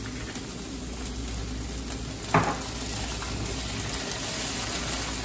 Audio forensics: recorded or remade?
recorded